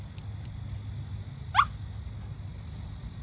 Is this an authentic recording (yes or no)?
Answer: yes